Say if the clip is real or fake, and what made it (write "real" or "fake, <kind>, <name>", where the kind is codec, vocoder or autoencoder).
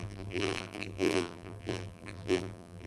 fake, vocoder, BigVGAN v2